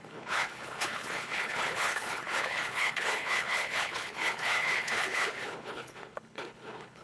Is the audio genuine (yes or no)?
no